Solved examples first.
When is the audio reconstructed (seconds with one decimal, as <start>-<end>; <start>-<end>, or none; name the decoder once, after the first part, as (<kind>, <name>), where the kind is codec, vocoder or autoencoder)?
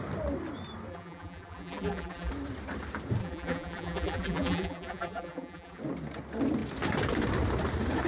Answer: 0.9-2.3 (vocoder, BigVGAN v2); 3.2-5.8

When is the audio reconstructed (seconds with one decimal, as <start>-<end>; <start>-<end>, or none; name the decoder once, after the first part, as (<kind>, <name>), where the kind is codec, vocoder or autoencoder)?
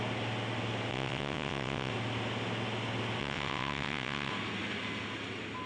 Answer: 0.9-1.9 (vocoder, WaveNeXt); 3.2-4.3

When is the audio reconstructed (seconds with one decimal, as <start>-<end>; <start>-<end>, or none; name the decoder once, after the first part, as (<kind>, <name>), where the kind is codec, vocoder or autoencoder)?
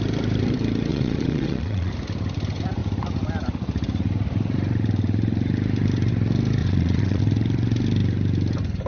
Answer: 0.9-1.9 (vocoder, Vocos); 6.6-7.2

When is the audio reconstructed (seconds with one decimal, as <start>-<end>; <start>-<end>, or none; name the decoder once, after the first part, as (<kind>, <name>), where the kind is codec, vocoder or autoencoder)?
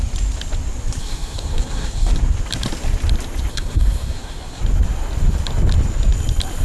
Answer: 1.0-2.1 (codec, SNAC); 3.5-4.6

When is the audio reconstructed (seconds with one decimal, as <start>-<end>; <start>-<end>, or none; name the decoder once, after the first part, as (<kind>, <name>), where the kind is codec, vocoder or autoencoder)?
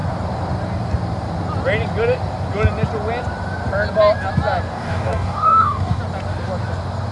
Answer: 4.7-6.0 (codec, DAC)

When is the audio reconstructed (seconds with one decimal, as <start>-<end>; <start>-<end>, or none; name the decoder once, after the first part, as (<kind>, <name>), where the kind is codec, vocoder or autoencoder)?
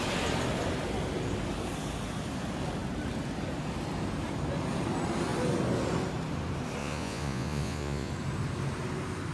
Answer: 6.8-8.1 (vocoder, Vocos)